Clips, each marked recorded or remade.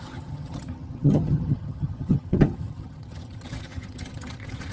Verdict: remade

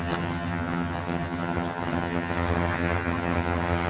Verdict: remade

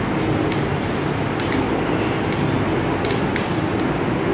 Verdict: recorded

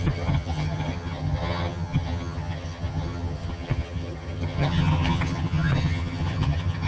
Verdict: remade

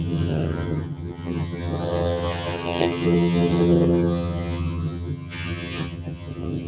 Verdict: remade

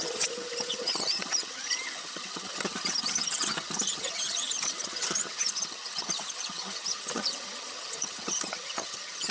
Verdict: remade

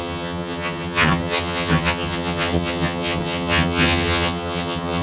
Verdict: remade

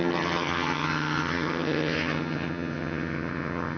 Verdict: remade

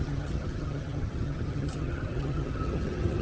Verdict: remade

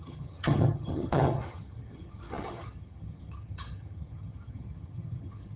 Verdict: remade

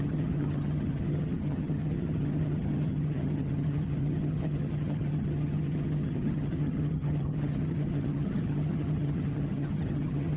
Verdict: remade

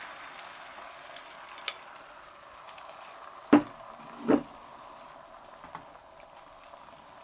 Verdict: recorded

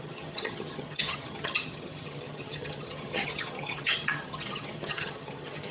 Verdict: remade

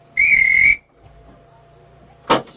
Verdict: recorded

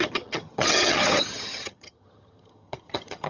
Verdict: remade